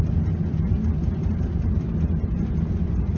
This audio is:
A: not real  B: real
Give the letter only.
B